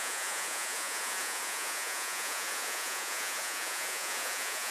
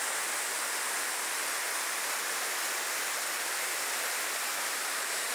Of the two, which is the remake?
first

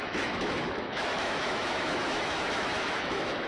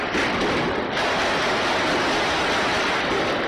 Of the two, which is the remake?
first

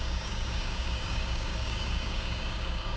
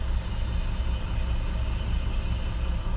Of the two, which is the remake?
first